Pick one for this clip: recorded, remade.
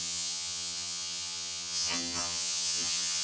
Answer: remade